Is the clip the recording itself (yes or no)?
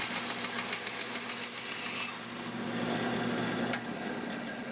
yes